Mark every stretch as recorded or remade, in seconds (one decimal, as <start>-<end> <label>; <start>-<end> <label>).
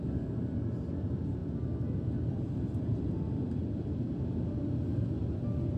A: 0.0-5.8 recorded